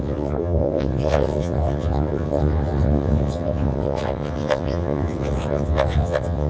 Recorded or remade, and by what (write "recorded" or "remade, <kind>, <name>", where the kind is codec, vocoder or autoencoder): remade, vocoder, WaveNeXt